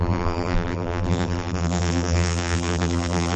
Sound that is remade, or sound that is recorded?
remade